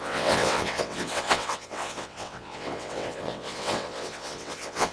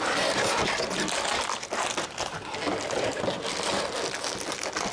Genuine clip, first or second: second